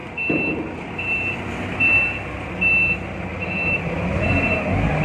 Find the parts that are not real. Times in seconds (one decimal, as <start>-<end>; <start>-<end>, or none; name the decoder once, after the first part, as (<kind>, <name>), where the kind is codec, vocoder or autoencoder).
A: 3.3-4.1 (vocoder, BigVGAN v2)